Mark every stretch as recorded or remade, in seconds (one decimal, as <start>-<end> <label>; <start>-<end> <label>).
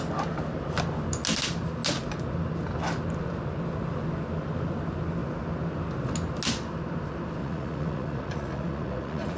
0.0-7.4 recorded; 7.4-9.4 remade